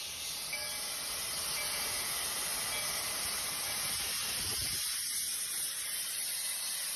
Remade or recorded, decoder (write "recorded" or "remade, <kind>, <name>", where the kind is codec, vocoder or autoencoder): recorded